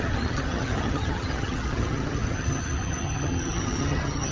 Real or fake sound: fake